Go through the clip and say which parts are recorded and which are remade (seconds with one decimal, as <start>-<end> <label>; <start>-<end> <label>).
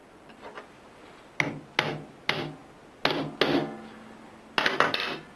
0.0-5.4 recorded